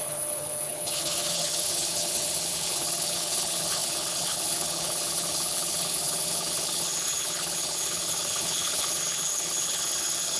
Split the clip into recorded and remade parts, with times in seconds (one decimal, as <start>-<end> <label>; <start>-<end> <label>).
0.0-10.4 remade